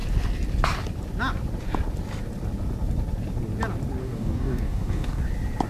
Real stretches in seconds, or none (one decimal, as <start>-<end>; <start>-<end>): 0.0-4.0; 5.2-5.7